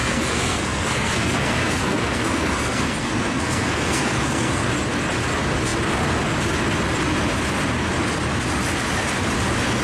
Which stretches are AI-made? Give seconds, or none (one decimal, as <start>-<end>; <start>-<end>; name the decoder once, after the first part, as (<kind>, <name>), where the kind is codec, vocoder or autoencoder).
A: 0.0-4.7 (codec, SNAC)